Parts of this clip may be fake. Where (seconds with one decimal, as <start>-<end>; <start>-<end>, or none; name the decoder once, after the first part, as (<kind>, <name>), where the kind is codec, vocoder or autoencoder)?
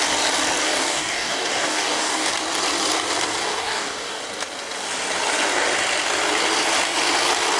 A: 0.6-2.3 (codec, DAC); 3.4-4.2